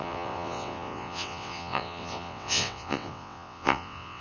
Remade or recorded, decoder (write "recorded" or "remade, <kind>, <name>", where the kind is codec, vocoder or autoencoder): remade, vocoder, WaveNeXt